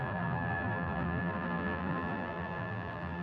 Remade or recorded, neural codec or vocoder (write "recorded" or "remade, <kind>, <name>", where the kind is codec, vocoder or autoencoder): remade, vocoder, BigVGAN v2